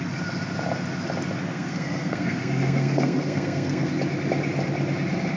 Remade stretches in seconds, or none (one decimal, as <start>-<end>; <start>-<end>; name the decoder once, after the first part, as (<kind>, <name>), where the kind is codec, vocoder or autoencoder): 1.5-3.9 (codec, SNAC)